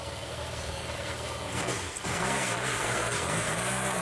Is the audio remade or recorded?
remade